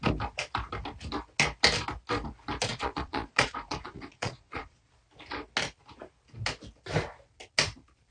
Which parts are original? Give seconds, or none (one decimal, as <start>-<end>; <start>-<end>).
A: 0.0-2.7; 4.9-8.1